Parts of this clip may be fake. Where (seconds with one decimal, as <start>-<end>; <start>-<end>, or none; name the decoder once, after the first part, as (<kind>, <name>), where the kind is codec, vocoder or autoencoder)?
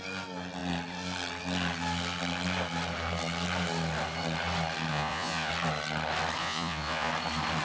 4.9-5.5 (vocoder, Vocos); 6.4-7.1